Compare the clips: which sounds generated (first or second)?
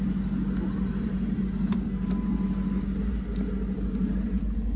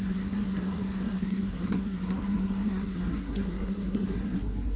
second